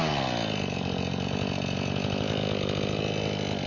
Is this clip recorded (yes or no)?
yes